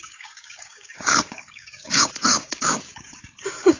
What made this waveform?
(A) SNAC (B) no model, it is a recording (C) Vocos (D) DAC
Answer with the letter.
D